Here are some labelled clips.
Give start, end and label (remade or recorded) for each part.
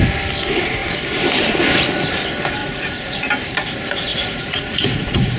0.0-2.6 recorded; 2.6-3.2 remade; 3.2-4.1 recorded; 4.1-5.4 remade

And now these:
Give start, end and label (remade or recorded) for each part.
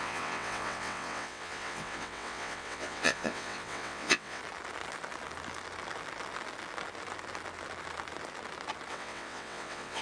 0.0-4.4 remade; 4.4-8.9 recorded; 8.9-10.0 remade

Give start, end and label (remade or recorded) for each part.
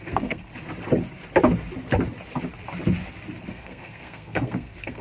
0.0-0.5 remade; 0.5-3.5 recorded; 3.5-5.0 remade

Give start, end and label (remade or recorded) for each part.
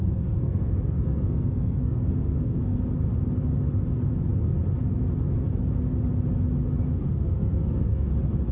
0.0-2.8 remade; 2.8-7.0 recorded; 7.0-8.1 remade; 8.1-8.5 recorded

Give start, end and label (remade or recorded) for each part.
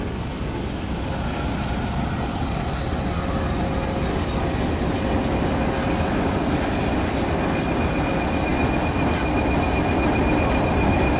0.0-11.2 recorded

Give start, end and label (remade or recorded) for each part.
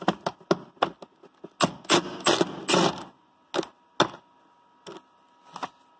0.0-6.0 recorded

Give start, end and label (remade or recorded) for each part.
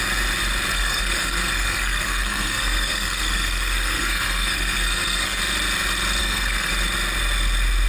0.0-0.7 recorded; 0.7-5.4 remade; 5.4-6.2 recorded; 6.2-6.7 remade; 6.7-7.9 recorded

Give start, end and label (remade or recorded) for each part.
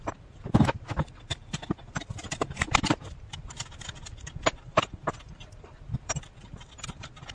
0.0-7.3 remade